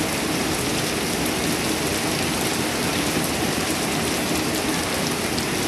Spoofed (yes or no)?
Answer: no